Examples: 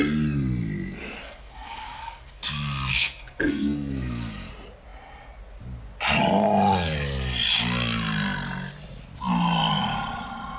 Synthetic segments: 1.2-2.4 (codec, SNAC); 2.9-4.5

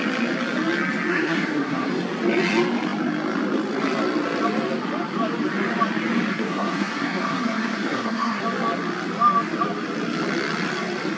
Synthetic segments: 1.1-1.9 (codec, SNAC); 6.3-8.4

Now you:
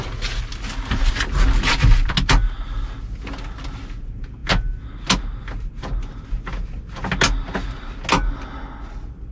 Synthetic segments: none

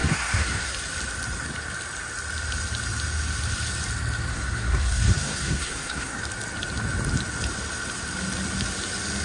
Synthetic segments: 0.0-0.7 (codec, SNAC); 4.3-6.2

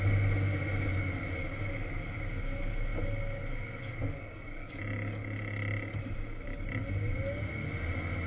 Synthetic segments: 4.2-4.7 (codec, SNAC)

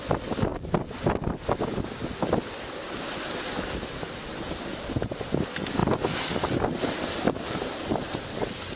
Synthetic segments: none